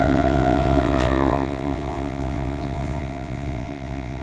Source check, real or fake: fake